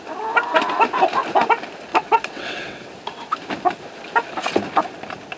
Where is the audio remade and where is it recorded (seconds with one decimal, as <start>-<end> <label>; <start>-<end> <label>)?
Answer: 0.0-1.9 recorded; 1.9-2.9 remade; 2.9-5.4 recorded